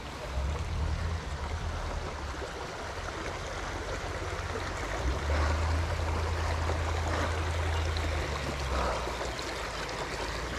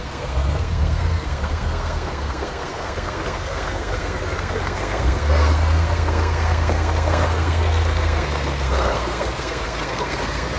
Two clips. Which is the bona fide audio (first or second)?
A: first